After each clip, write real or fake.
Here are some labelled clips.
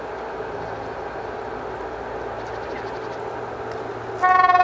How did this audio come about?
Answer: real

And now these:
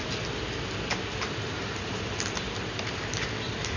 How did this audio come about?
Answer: real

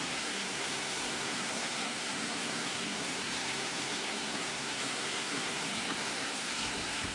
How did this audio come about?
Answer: fake